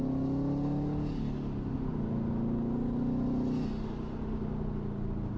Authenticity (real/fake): real